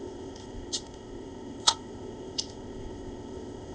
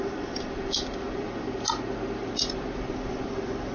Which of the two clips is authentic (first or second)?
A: second